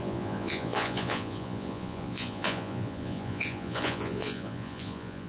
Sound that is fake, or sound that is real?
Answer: fake